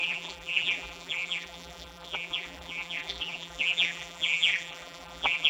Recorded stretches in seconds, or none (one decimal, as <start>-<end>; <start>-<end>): none

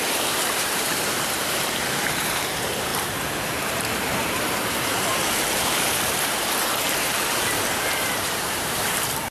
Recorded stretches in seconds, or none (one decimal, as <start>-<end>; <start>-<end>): none

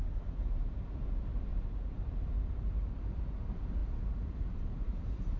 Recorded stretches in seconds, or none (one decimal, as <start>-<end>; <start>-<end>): 3.8-4.4